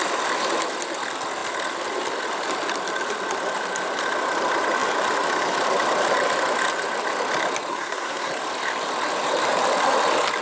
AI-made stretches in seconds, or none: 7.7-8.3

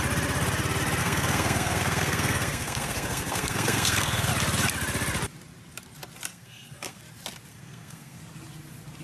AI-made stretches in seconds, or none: 1.0-4.3; 6.3-7.0; 7.5-8.2

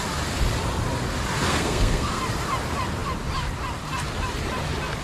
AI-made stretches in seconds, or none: 1.5-2.2

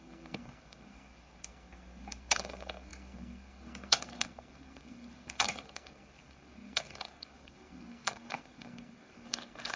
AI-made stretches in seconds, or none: 0.0-9.8